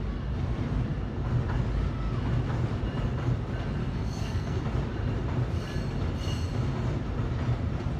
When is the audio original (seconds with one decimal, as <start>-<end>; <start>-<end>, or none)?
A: 0.0-3.8; 4.6-8.0